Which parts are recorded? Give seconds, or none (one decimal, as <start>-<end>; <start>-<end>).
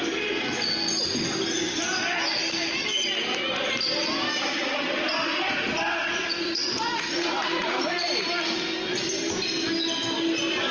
0.0-4.6; 8.1-10.7